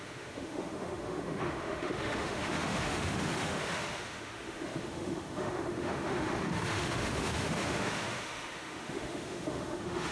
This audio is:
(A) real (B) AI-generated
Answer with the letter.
B